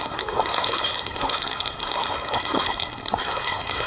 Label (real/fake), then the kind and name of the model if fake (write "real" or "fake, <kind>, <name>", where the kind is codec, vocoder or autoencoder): fake, codec, SNAC